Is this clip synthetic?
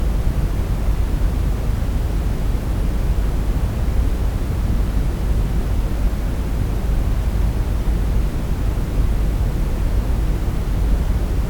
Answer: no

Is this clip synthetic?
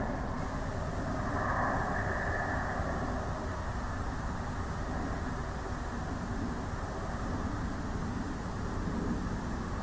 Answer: no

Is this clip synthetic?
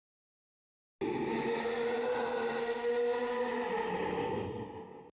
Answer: no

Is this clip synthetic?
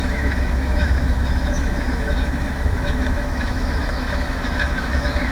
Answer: yes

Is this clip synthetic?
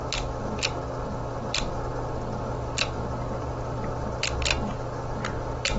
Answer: no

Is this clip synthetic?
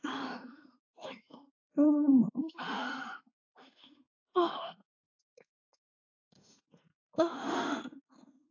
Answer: yes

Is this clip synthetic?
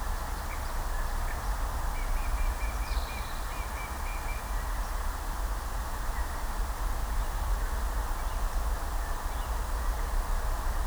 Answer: no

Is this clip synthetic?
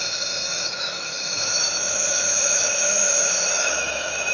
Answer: yes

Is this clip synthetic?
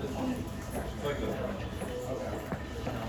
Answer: no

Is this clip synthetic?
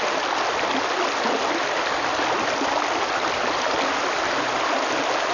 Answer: no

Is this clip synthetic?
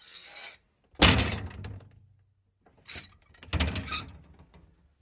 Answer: no